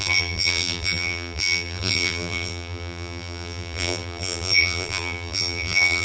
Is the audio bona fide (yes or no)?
no